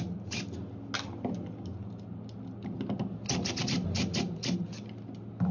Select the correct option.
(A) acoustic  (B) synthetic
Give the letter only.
A